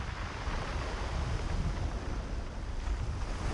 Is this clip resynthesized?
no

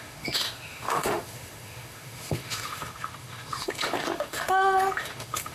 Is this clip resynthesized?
yes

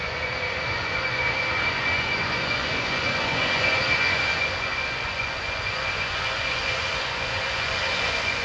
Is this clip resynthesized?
yes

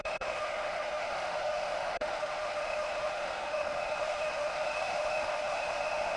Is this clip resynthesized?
yes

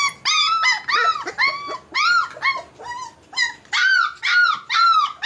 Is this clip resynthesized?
no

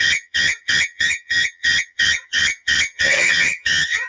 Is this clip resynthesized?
yes